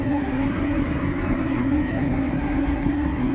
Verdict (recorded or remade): remade